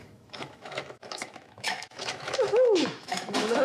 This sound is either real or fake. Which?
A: fake